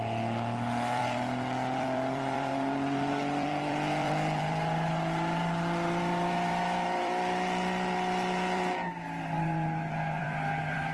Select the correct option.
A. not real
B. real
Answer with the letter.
A